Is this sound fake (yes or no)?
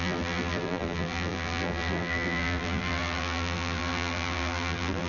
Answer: yes